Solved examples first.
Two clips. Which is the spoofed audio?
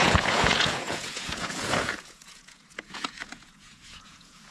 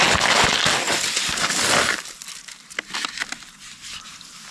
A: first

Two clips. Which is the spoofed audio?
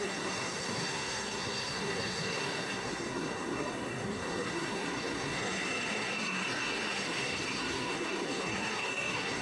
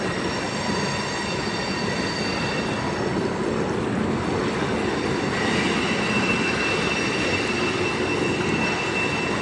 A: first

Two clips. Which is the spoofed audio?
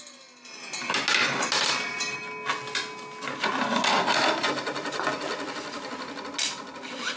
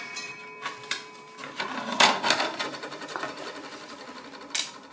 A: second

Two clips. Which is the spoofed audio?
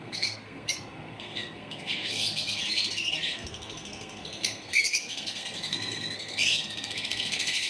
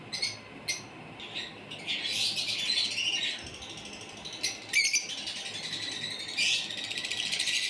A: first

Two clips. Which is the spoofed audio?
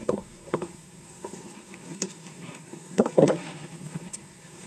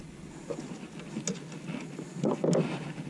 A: first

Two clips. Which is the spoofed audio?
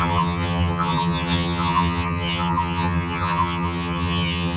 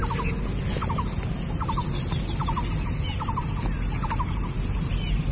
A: first